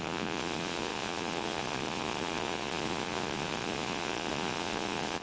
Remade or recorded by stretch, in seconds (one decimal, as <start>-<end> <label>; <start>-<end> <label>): 0.0-5.2 remade